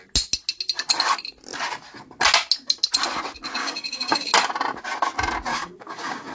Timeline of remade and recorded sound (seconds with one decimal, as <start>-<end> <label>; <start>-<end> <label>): 0.0-3.6 recorded; 3.6-4.3 remade; 4.3-5.5 recorded; 5.5-6.3 remade

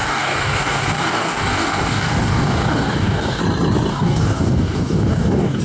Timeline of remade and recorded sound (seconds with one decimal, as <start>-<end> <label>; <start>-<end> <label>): 0.0-3.4 remade; 3.4-3.9 recorded; 3.9-5.6 remade

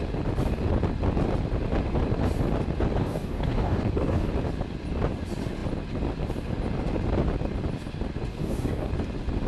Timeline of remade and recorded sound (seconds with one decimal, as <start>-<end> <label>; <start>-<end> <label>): 0.0-3.0 recorded; 3.0-4.3 remade; 4.3-8.3 recorded; 8.3-8.9 remade; 8.9-9.5 recorded

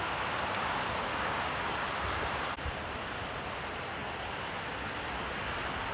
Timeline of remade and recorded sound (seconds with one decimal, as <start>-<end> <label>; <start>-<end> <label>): 0.0-1.1 recorded; 1.1-1.8 remade; 1.8-5.9 recorded